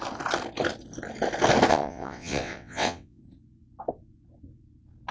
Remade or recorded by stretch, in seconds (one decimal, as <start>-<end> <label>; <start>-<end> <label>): 0.0-1.7 recorded; 1.7-3.2 remade; 3.2-5.1 recorded